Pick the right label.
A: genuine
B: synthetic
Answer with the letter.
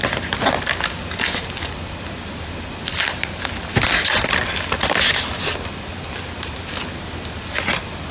A